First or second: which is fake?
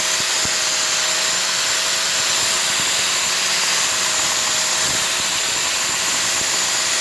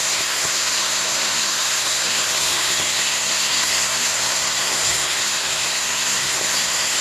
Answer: second